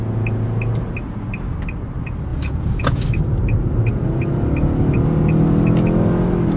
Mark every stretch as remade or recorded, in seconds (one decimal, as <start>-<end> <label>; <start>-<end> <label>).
0.0-2.3 recorded; 2.3-3.0 remade; 3.0-6.6 recorded